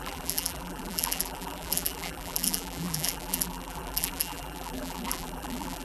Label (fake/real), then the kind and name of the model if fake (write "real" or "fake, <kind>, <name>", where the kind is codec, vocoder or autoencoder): fake, vocoder, BigVGAN v2